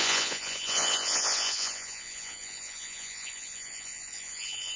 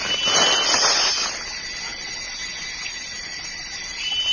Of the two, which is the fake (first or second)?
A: first